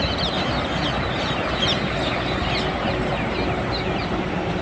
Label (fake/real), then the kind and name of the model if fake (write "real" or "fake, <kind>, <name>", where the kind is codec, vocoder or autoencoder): real